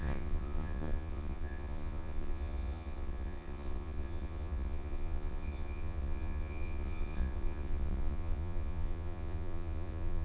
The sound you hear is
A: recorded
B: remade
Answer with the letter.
B